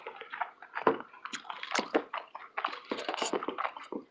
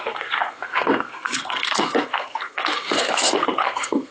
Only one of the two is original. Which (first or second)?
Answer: first